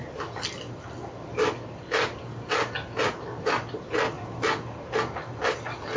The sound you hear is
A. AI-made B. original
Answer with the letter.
B